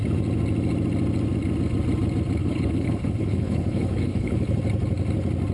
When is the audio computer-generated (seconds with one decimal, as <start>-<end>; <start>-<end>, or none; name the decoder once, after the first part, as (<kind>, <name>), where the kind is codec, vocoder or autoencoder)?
2.4-4.6 (codec, HILCodec)